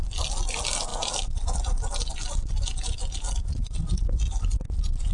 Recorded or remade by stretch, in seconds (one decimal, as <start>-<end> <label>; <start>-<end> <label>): 0.0-5.1 recorded